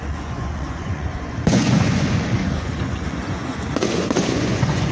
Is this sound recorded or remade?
remade